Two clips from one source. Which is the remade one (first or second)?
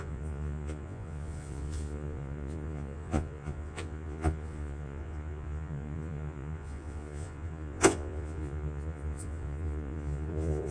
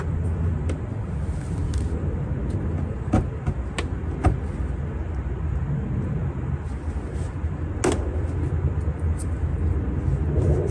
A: first